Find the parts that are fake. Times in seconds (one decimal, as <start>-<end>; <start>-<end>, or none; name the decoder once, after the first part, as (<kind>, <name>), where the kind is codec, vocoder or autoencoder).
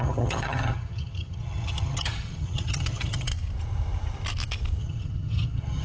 0.0-3.3 (vocoder, HiFi-GAN); 4.8-5.8